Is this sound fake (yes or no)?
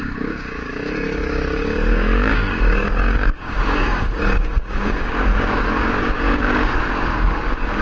yes